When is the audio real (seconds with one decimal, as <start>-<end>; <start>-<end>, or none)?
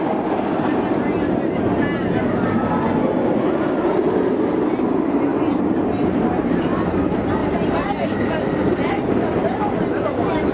0.0-10.5